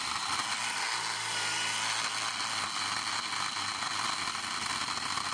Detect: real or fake real